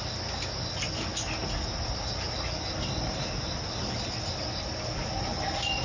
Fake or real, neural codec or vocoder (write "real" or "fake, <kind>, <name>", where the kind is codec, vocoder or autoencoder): real